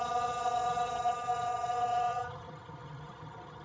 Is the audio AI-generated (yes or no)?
yes